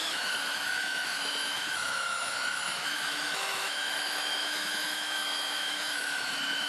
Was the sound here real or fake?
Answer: fake